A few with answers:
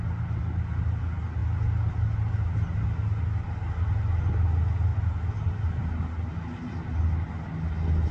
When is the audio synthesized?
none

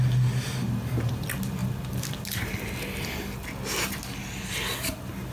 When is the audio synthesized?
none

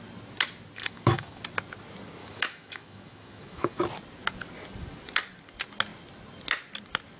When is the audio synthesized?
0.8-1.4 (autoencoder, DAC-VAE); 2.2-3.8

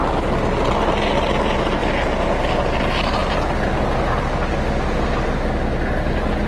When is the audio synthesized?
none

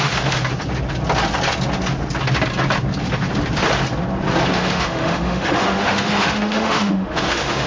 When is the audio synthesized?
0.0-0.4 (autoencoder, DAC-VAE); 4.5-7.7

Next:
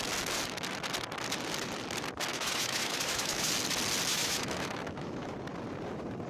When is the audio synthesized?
2.3-3.5 (autoencoder, DAC-VAE); 4.1-5.3

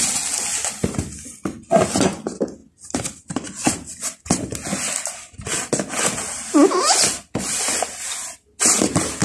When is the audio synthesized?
none